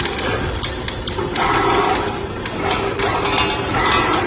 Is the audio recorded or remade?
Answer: recorded